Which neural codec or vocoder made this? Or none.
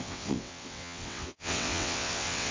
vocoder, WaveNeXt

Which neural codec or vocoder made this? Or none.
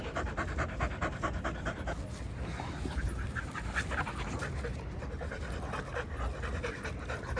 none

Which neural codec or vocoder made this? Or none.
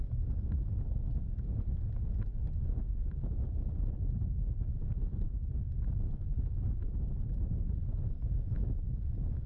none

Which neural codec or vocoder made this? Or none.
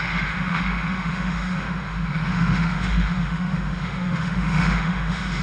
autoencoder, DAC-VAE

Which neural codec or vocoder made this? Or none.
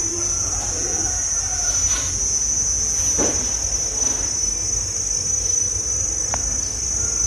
none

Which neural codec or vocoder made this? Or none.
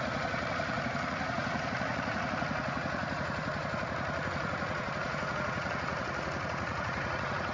vocoder, Vocos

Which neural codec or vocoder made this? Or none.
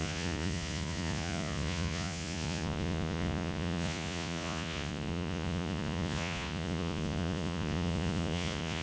vocoder, Vocos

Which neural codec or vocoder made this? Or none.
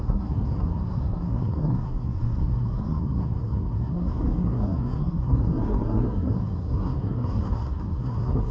codec, SNAC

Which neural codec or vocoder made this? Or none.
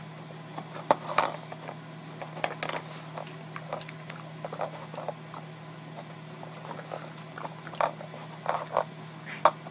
none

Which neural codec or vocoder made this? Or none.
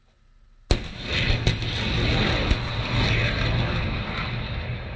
none